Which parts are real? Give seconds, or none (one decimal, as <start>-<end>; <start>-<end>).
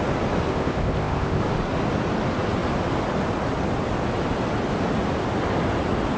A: 0.0-0.5; 1.4-6.2